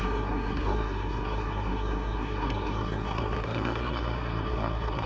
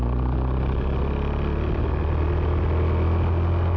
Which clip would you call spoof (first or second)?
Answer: first